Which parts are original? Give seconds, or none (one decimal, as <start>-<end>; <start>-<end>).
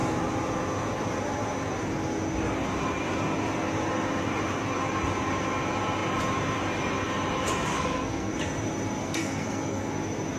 0.0-7.7; 8.3-9.0; 9.9-10.4